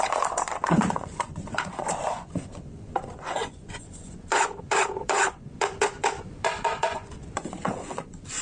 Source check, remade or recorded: remade